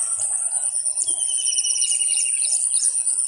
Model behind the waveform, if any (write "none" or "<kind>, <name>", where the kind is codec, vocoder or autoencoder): none